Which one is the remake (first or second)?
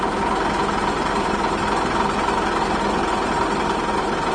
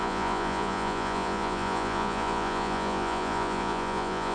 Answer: second